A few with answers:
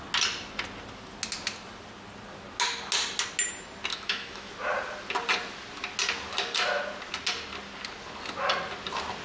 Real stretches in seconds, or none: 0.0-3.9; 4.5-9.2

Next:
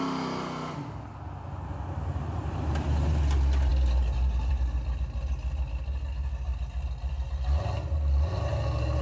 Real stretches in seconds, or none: 0.0-9.0